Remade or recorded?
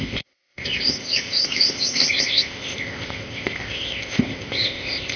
remade